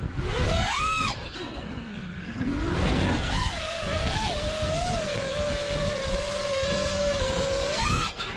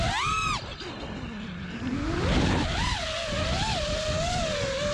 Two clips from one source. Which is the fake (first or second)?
first